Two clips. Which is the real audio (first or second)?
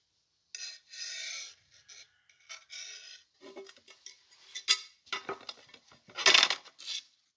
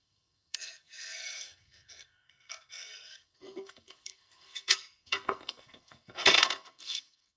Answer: first